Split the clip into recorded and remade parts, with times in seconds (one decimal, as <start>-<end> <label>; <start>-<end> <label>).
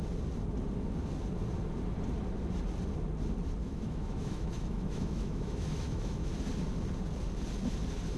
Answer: 0.0-3.6 recorded; 3.6-6.3 remade; 6.3-8.2 recorded